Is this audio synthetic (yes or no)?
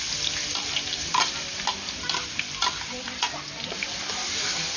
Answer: no